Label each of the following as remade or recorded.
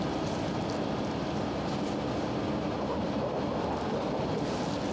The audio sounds recorded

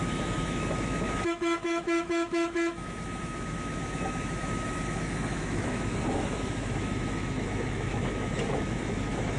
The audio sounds remade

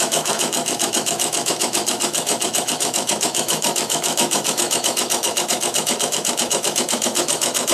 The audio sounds remade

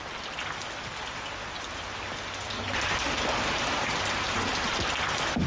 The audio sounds recorded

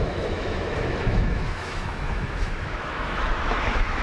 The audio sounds remade